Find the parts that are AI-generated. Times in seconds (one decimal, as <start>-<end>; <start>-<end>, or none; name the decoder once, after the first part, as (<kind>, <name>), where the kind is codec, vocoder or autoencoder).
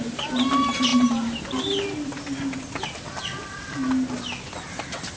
0.9-1.6 (vocoder, BigVGAN v2)